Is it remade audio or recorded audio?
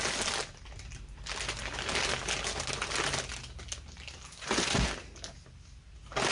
recorded